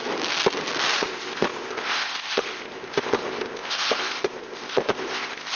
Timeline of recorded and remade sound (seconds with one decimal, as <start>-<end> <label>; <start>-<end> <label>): 0.0-1.0 recorded; 1.0-5.6 remade